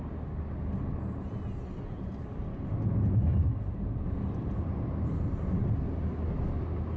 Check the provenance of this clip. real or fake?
real